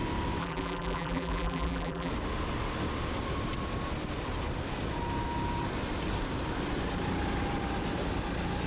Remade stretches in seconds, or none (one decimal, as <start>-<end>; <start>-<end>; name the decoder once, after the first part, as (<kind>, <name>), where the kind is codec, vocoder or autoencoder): 0.4-2.1 (vocoder, BigVGAN v2)